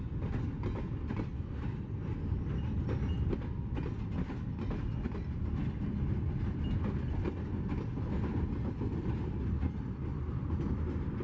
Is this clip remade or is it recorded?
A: recorded